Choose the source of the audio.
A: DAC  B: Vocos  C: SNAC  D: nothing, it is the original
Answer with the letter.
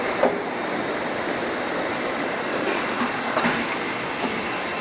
D